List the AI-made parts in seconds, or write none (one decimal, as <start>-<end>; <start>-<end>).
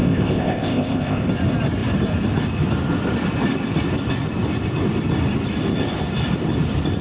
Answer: 0.0-1.3